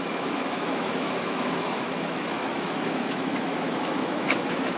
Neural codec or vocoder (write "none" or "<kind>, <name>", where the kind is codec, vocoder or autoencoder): autoencoder, DAC-VAE